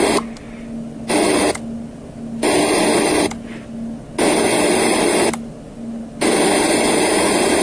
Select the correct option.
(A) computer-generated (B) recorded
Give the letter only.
B